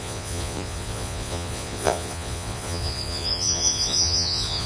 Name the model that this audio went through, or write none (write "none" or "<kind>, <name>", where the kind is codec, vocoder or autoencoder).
vocoder, Vocos